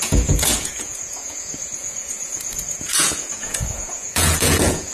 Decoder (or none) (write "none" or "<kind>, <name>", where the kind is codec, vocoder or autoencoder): vocoder, Vocos